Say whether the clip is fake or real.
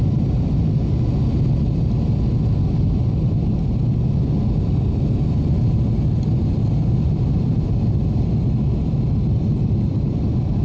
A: real